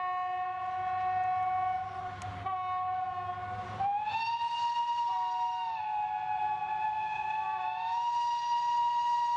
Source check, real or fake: real